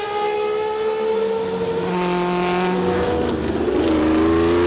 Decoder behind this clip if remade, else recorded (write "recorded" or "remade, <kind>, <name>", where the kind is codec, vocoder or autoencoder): recorded